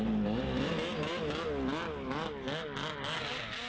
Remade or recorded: recorded